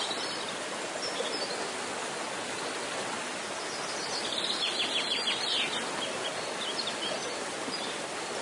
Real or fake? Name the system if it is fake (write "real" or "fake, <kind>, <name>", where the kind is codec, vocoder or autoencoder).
real